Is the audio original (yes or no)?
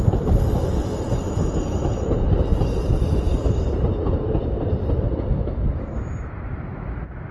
yes